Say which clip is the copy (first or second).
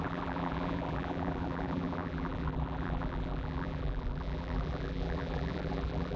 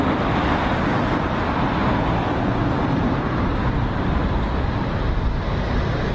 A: first